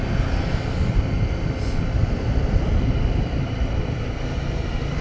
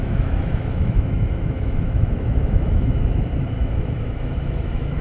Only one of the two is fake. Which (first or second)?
second